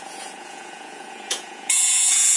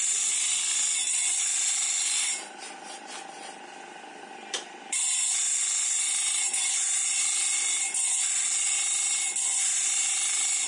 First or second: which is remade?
first